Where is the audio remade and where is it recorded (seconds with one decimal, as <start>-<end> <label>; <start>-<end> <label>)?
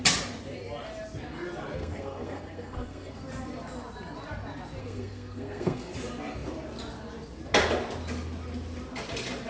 0.0-1.8 recorded; 1.8-3.3 remade; 3.3-4.8 recorded; 4.8-5.9 remade; 5.9-9.5 recorded